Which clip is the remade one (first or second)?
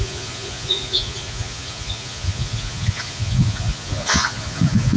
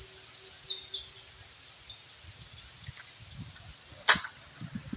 first